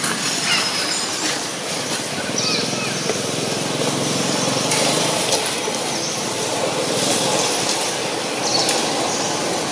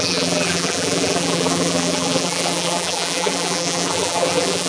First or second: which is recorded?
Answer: first